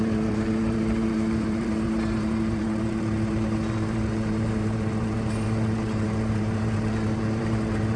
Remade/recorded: remade